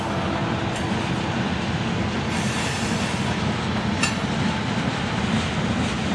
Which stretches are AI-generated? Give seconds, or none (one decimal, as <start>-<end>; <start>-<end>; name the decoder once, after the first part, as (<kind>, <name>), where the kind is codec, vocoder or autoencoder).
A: none